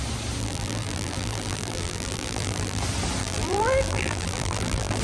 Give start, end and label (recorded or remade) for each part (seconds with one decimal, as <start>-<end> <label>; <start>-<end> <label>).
0.0-0.4 recorded; 0.4-2.8 remade; 2.8-3.2 recorded; 3.2-5.0 remade